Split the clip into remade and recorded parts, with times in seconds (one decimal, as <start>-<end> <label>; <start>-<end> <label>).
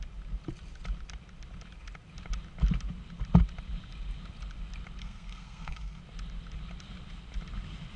0.0-5.0 recorded; 5.0-6.0 remade; 6.0-8.0 recorded